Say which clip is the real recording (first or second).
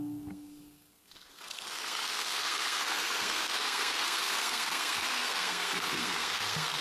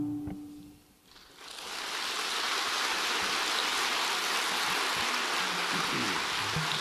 second